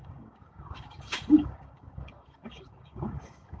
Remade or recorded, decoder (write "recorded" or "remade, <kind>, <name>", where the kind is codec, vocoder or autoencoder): remade, codec, DAC